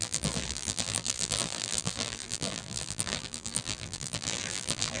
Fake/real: fake